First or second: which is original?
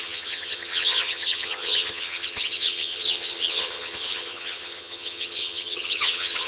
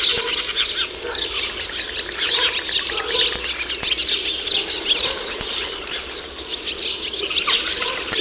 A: second